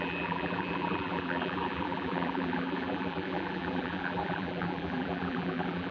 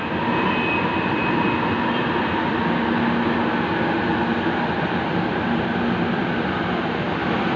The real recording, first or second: second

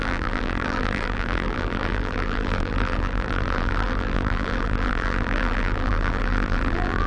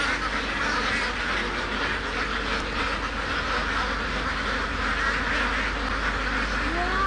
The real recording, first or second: second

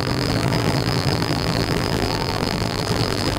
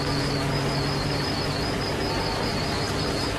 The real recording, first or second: second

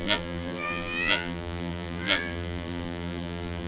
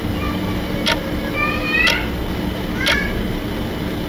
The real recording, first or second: second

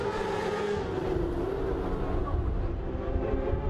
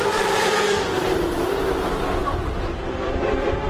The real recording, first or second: first